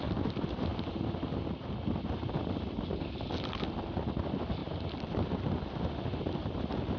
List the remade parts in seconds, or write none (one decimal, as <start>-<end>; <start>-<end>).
4.6-5.4